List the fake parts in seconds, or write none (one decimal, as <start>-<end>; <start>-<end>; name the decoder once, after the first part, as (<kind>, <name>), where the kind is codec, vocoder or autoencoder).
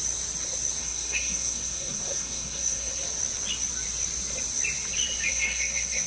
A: 0.8-2.9 (codec, SNAC); 5.3-6.1